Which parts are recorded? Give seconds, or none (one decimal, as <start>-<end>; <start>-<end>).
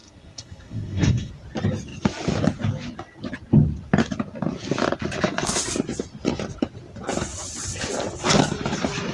1.3-9.1